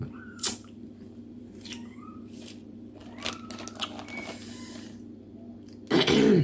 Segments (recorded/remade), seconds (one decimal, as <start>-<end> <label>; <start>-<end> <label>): 0.0-3.0 remade; 3.0-6.4 recorded